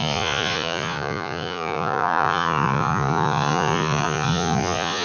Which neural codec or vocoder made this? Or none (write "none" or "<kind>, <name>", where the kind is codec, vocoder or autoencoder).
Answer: vocoder, Vocos